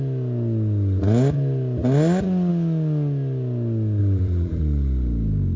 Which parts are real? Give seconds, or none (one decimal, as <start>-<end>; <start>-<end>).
0.0-4.0; 4.6-5.6